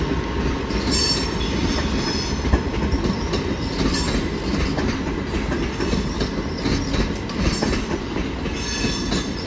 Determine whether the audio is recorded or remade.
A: recorded